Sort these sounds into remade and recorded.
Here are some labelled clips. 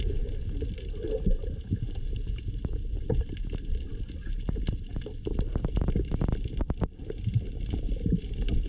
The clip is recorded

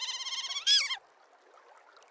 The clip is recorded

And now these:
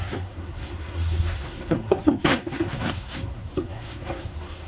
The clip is remade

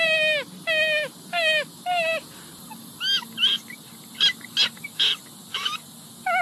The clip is recorded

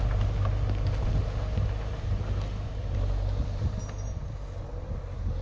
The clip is recorded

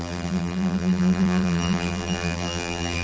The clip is remade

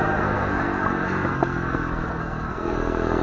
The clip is remade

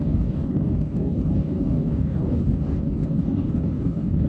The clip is remade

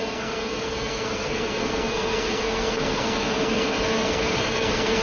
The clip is remade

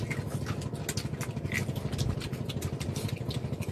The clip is recorded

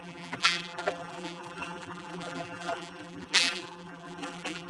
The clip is remade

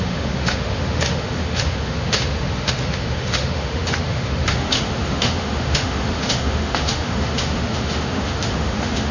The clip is remade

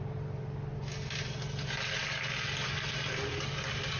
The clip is recorded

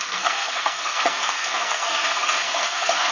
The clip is remade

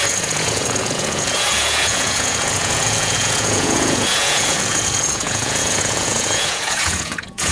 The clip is remade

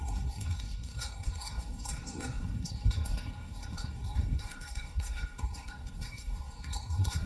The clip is remade